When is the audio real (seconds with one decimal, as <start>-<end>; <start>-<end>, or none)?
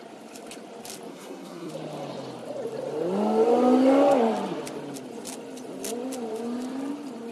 0.0-1.1; 1.7-7.3